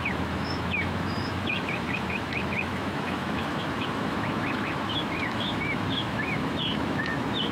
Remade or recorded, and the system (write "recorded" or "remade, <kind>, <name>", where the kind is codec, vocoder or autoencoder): remade, autoencoder, DAC-VAE